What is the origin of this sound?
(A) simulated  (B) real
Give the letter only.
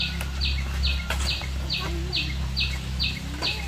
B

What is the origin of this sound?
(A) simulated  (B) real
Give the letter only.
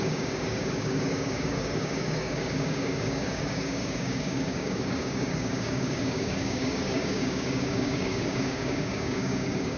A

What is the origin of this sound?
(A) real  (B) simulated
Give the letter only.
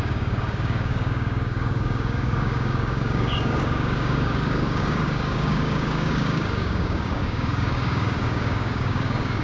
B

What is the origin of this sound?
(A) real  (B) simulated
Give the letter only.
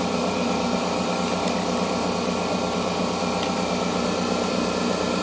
A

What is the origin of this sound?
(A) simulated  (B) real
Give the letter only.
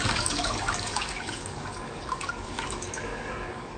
A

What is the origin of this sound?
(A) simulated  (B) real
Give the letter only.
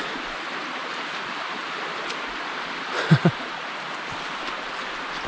B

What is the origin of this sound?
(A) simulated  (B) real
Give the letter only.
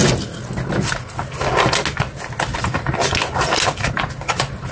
B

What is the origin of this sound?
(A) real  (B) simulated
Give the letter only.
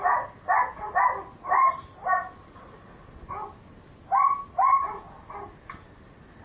A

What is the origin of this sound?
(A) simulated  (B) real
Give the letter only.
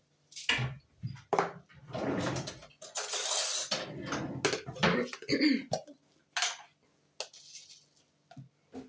B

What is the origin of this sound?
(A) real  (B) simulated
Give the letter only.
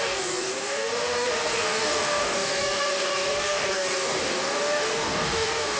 B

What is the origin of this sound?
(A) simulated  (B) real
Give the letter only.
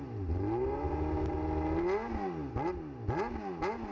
B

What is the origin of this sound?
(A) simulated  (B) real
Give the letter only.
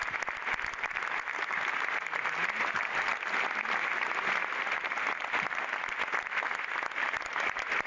B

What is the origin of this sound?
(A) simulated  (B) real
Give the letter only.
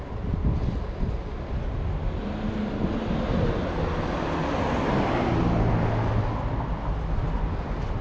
B